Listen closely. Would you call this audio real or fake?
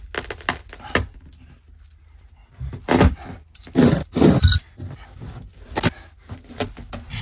real